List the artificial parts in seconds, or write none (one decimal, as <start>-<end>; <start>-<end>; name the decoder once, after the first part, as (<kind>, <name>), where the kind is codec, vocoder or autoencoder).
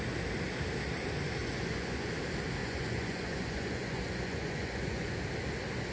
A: 1.4-2.1 (vocoder, Vocos); 2.6-5.1